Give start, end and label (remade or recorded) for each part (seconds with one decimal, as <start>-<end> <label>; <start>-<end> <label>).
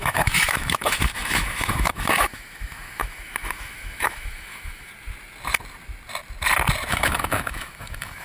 0.0-4.9 remade; 4.9-6.9 recorded; 6.9-8.2 remade